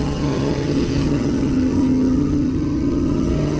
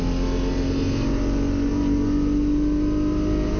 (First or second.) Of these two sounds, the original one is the second